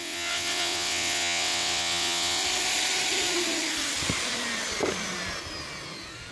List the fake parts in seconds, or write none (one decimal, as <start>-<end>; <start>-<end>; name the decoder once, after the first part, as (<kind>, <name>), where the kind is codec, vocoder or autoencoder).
0.0-2.4 (vocoder, WaveNeXt)